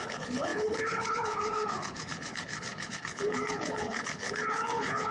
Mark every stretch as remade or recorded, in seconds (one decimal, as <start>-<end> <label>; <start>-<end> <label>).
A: 0.0-5.1 remade